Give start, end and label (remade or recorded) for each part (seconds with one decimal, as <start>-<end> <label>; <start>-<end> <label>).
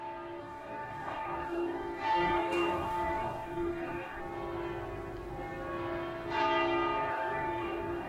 0.0-0.4 recorded; 0.4-4.2 remade; 4.2-7.1 recorded; 7.1-8.1 remade